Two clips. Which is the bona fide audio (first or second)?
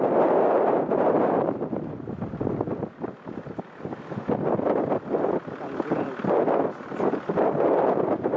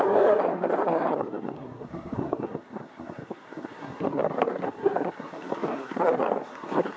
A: first